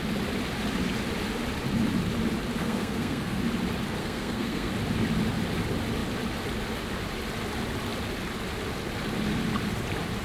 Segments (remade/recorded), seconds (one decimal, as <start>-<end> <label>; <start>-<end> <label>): 0.0-2.6 recorded; 2.6-3.4 remade; 3.4-4.0 recorded; 4.0-4.7 remade; 4.7-10.2 recorded